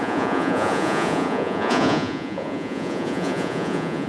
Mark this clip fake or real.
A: fake